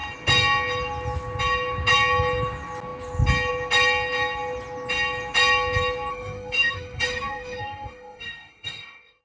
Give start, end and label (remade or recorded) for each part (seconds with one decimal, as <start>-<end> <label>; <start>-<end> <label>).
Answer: 0.0-6.1 recorded; 6.1-9.2 remade